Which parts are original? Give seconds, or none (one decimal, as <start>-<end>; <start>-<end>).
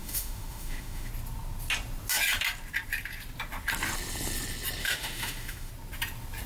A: 1.1-4.8; 5.7-6.5